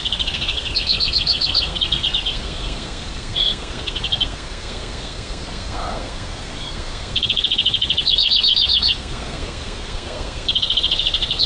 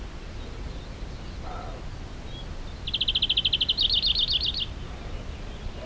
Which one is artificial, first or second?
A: first